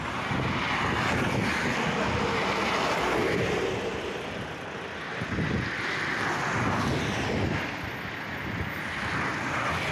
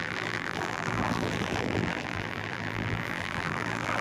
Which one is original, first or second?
first